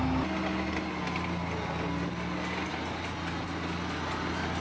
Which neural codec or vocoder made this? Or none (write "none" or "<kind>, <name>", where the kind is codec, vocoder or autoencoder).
none